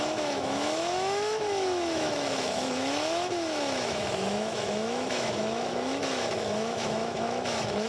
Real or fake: fake